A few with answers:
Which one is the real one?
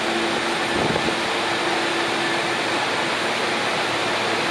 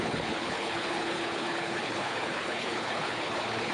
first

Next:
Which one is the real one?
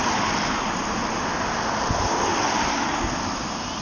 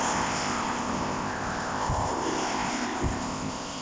first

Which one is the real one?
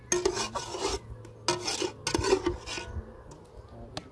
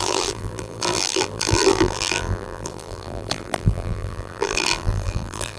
first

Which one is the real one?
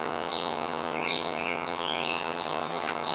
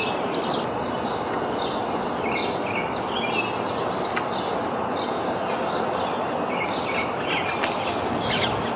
second